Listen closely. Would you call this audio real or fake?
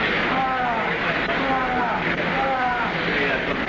real